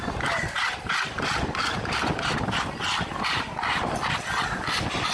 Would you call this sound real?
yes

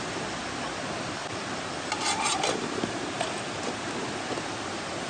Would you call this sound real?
yes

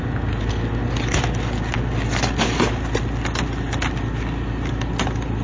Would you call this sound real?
yes